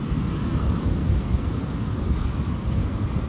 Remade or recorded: remade